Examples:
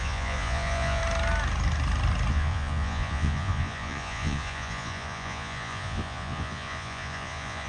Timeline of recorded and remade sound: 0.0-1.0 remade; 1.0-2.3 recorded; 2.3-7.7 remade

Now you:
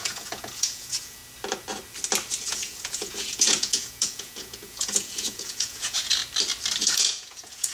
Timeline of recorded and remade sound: 0.0-1.2 remade; 1.2-2.5 recorded; 2.5-6.2 remade; 6.2-6.8 recorded; 6.8-7.7 remade

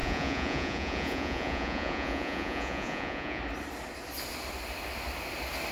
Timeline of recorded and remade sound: 0.0-3.4 remade; 3.4-5.7 recorded

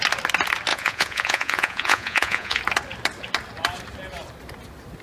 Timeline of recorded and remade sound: 0.0-0.7 recorded; 0.7-2.6 remade; 2.6-5.0 recorded

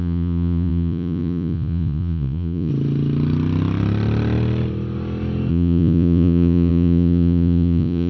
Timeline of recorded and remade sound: 0.0-2.7 remade; 2.7-5.5 recorded; 5.5-8.1 remade

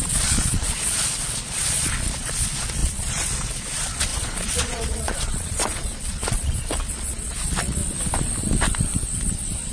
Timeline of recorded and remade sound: 0.0-7.8 remade; 7.8-9.7 recorded